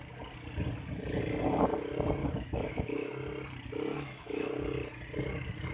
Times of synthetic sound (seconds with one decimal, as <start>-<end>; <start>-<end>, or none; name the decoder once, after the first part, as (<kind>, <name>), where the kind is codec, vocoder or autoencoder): 2.2-3.1 (autoencoder, DAC-VAE); 3.9-4.5